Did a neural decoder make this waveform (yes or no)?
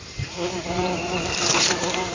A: yes